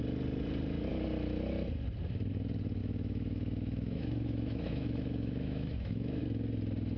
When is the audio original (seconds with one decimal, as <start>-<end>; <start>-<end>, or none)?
0.0-2.8; 6.2-7.0